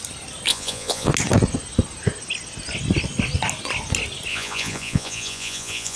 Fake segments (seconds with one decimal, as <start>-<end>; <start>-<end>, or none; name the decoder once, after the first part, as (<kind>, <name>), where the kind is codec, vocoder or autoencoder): 0.5-1.1 (vocoder, Vocos); 4.3-6.0